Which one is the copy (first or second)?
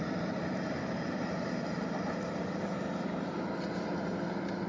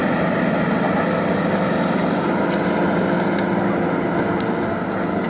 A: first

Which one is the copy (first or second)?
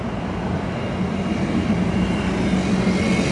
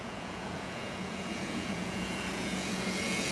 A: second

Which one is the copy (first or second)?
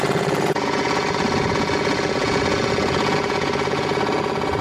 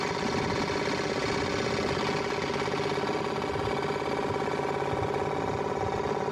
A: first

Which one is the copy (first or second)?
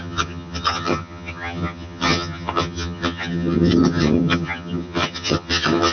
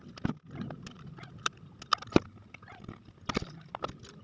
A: first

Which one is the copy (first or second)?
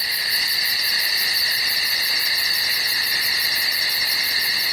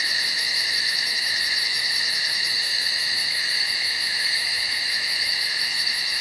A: second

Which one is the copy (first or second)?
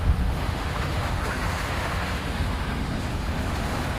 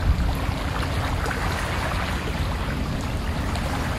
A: first